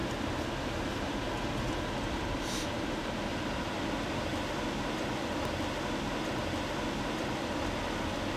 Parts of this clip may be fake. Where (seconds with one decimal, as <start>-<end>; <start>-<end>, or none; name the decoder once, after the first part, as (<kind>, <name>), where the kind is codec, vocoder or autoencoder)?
none